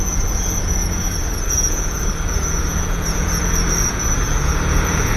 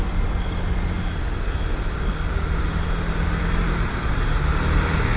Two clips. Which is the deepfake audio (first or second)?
first